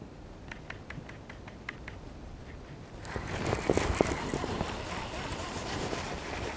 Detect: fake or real fake